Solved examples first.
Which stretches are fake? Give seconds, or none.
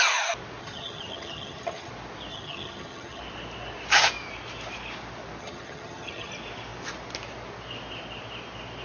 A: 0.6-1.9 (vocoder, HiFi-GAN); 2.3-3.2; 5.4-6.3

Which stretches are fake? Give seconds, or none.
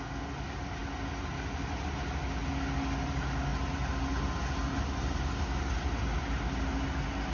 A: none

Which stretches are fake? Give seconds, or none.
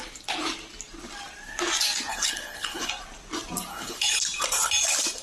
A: 2.1-2.9 (codec, HILCodec); 3.7-4.2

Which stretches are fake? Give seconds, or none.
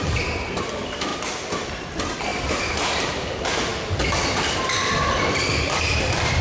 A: 0.0-1.1 (vocoder, BigVGAN v2); 1.8-3.7; 4.6-6.4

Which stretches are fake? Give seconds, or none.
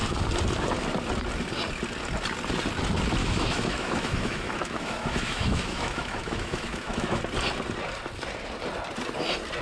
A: 3.2-7.2 (autoencoder, DAC-VAE)